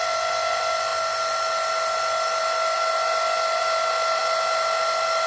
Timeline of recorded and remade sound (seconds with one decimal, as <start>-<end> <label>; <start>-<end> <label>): 0.0-5.3 recorded